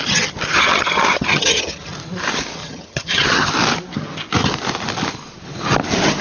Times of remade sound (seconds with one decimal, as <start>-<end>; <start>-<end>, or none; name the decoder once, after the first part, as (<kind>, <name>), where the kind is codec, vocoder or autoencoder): 0.5-1.9 (vocoder, HiFi-GAN); 2.6-3.5